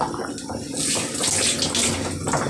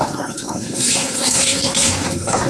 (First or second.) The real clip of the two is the first